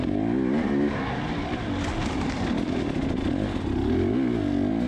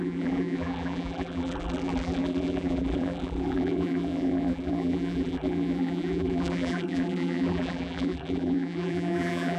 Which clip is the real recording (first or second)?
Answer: first